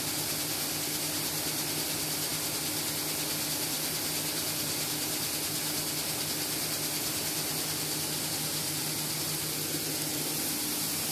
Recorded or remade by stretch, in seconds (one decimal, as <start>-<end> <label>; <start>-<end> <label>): 0.0-11.1 recorded